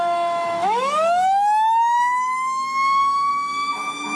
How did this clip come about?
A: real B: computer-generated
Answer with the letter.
B